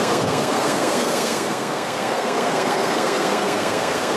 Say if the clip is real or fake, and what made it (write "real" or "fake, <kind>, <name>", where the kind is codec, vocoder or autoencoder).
fake, codec, SNAC